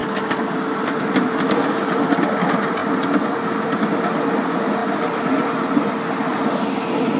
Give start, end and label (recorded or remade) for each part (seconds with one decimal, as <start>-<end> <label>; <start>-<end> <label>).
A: 0.0-0.5 remade; 0.5-7.2 recorded